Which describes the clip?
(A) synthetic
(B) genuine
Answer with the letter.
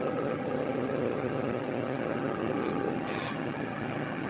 A